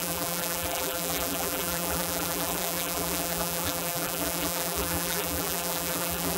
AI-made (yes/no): yes